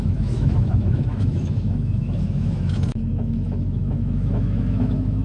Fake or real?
fake